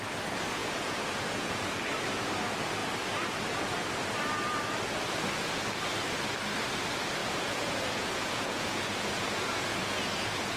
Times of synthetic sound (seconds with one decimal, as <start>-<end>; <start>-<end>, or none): 0.6-1.6; 7.2-10.6